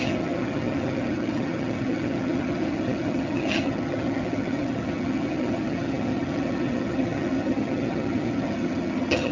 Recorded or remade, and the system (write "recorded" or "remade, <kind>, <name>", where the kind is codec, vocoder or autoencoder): remade, vocoder, HiFi-GAN